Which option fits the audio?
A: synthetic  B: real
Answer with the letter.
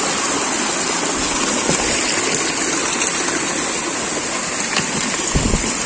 B